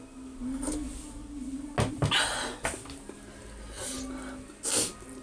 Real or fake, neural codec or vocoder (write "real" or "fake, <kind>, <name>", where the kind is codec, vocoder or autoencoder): real